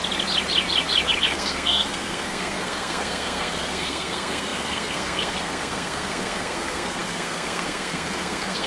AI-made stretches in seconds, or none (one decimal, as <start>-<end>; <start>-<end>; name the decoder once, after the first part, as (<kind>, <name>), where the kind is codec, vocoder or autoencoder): 1.2-8.7 (codec, SNAC)